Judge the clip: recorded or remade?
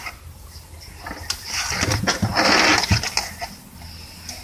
recorded